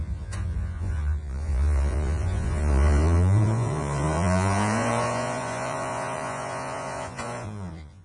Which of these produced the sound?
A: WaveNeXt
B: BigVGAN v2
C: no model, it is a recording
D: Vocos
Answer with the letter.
D